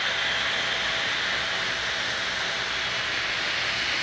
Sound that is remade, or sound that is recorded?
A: recorded